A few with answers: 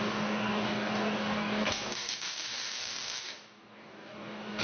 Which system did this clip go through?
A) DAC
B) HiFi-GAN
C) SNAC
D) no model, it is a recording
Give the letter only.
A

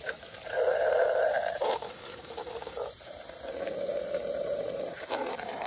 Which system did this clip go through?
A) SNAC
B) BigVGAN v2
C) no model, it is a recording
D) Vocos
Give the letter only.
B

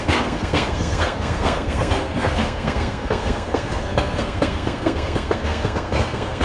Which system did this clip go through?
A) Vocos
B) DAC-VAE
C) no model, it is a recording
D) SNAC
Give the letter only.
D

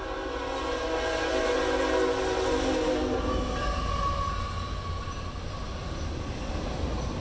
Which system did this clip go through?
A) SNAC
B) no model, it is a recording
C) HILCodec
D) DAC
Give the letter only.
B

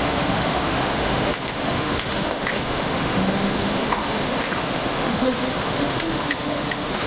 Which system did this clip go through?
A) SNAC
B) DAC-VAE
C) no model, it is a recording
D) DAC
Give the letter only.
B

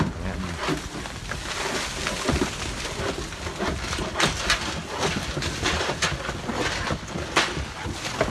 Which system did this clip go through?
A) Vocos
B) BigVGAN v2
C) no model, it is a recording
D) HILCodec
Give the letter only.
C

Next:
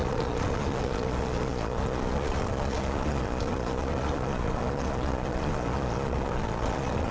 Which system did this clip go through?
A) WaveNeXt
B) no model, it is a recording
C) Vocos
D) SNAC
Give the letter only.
C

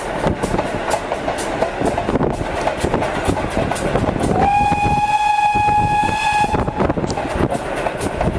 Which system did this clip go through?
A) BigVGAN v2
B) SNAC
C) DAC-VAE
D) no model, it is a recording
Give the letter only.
D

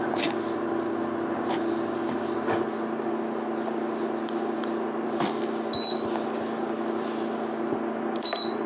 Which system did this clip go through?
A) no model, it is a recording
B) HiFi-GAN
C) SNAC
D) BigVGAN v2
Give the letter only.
A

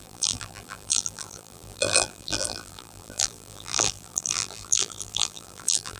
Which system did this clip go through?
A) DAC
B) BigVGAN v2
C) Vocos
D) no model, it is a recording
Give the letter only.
B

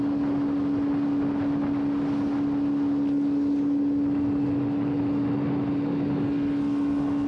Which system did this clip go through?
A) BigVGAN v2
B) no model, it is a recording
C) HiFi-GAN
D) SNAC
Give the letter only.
B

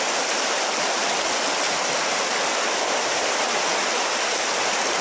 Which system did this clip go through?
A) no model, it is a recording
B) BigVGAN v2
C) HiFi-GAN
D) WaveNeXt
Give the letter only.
A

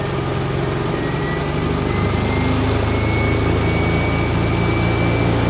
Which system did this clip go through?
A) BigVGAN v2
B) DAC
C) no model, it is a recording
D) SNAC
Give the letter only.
C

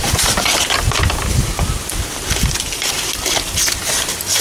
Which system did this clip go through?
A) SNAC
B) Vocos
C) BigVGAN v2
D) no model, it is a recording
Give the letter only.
D